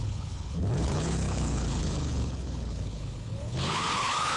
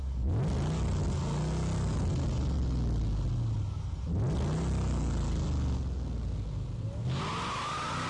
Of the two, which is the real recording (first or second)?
second